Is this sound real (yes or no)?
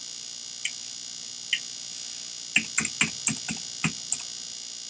yes